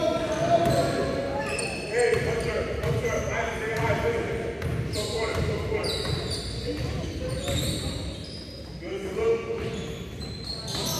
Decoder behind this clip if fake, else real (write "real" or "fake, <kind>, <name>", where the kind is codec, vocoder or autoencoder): real